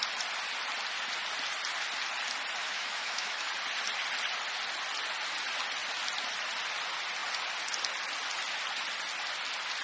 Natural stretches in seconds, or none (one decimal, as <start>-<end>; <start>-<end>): 0.0-2.6; 3.5-9.8